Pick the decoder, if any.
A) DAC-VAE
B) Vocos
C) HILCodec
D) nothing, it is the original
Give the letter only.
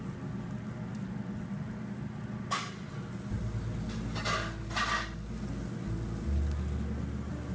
D